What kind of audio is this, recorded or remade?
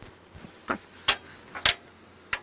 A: recorded